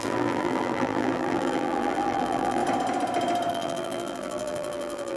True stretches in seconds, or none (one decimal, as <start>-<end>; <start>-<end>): 2.6-3.5